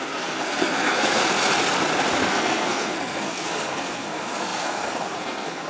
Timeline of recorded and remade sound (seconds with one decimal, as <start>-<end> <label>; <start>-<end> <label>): 0.0-1.2 remade; 1.2-2.3 recorded; 2.3-5.7 remade